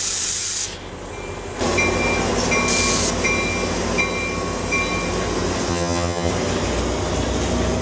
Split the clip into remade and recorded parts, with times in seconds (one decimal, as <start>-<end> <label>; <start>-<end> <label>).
0.0-5.7 recorded; 5.7-6.3 remade; 6.3-7.8 recorded